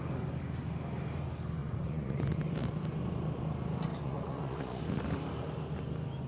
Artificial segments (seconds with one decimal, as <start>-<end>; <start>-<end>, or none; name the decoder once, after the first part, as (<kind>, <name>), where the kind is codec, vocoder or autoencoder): 1.6-2.4 (vocoder, Vocos); 3.9-4.8